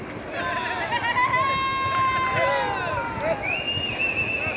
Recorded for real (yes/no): yes